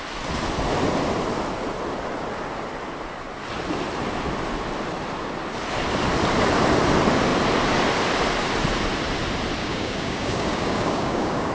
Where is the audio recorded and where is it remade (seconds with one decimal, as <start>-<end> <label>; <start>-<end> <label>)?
0.0-9.6 recorded; 9.6-11.5 remade